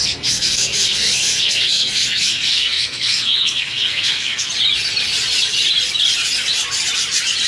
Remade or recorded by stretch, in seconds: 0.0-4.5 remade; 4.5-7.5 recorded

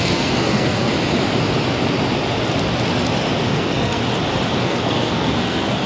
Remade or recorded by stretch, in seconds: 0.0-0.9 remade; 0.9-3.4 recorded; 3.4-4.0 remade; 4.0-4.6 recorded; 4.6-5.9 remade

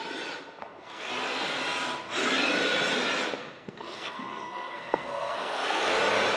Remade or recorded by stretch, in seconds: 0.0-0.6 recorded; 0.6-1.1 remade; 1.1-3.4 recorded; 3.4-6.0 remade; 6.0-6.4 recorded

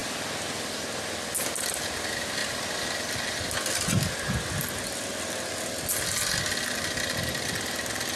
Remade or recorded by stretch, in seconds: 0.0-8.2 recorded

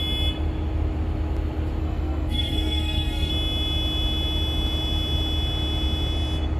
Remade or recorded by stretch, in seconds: 0.0-1.8 recorded; 1.8-3.3 remade; 3.3-6.6 recorded

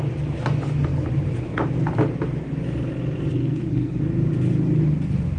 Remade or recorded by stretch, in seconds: 0.0-3.3 recorded; 3.3-4.0 remade; 4.0-5.4 recorded

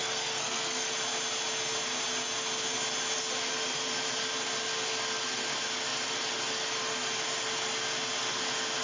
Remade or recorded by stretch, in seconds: 0.0-0.9 remade; 0.9-8.8 recorded